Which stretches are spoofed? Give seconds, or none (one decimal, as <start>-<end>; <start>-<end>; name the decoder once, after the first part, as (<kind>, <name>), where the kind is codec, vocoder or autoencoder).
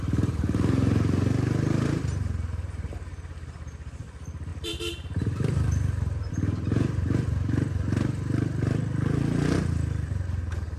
4.5-6.3 (vocoder, BigVGAN v2)